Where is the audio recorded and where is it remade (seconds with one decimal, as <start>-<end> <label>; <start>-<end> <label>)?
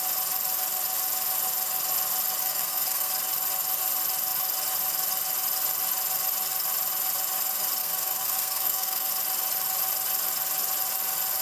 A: 0.0-2.4 recorded; 2.4-3.1 remade; 3.1-7.8 recorded; 7.8-9.1 remade; 9.1-11.4 recorded